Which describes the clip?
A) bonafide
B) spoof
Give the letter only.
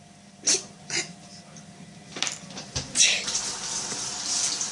B